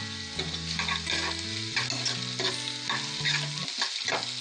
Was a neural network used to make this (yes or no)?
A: no